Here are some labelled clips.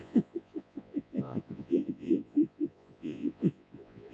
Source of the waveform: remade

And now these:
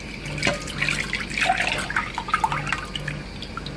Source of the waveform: recorded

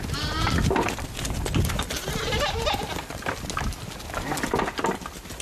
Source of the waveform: recorded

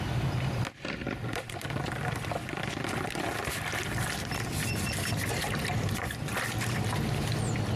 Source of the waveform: recorded